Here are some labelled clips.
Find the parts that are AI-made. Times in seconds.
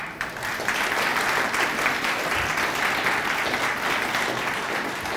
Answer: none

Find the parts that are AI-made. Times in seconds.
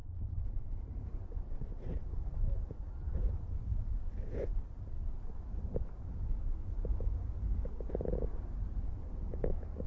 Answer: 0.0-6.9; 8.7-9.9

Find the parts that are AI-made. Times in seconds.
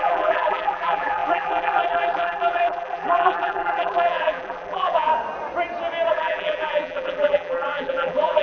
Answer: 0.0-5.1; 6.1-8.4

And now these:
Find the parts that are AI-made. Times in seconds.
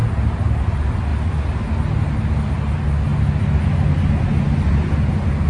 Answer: none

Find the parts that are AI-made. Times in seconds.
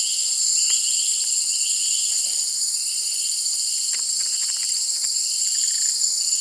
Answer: 4.6-6.4